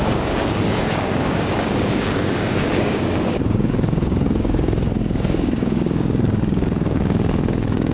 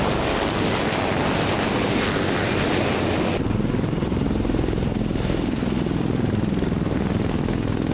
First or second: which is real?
second